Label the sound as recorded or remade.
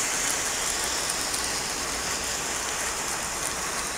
recorded